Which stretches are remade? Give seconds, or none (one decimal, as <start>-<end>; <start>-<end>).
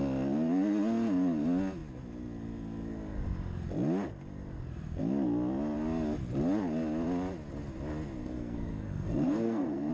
8.2-9.9